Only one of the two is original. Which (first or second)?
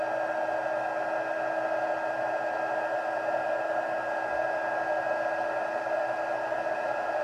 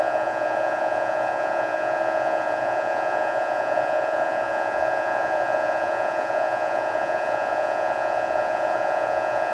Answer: first